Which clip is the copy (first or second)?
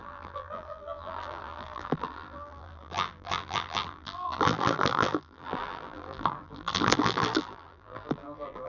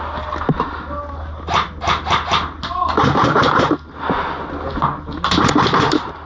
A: first